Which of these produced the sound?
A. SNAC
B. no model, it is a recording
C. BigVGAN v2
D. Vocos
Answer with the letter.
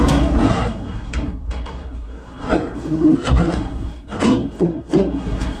A